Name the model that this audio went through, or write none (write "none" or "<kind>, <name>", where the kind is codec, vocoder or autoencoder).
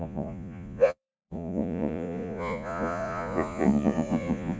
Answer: vocoder, Vocos